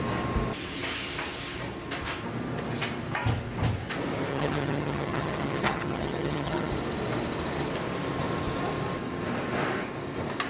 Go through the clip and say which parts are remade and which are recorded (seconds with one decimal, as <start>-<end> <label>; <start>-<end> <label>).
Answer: 0.0-4.3 recorded; 4.3-6.7 remade; 6.7-10.5 recorded